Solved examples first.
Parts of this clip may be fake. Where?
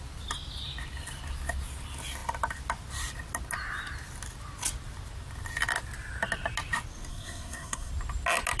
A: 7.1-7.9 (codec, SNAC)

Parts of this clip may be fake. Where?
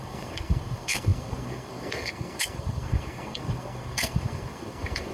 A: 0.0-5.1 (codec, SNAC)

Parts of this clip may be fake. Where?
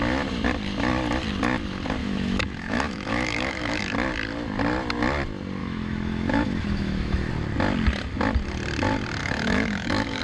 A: 2.0-3.8 (autoencoder, DAC-VAE); 5.6-7.3; 9.2-10.2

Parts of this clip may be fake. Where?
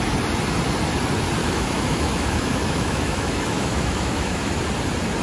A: 1.4-4.5 (autoencoder, DAC-VAE)